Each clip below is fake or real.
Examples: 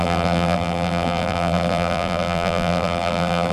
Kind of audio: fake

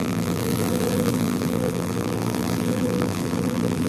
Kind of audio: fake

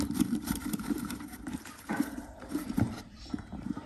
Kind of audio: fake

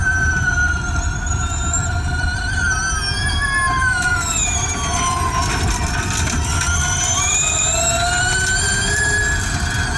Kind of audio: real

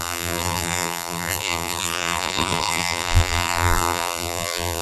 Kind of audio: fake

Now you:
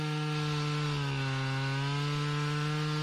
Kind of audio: real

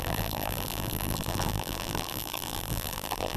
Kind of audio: fake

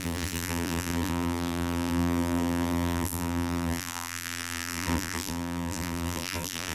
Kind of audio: fake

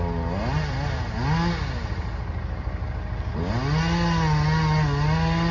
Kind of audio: real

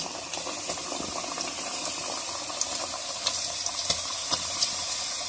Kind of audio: real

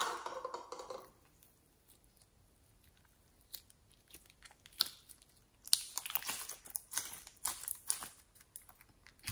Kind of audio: real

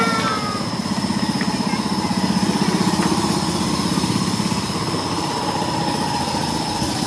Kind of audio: real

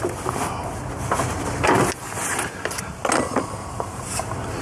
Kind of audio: real